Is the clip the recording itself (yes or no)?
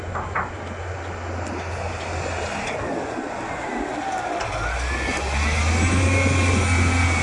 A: yes